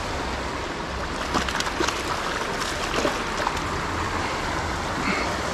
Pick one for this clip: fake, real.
real